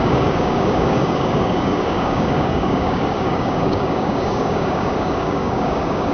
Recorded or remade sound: remade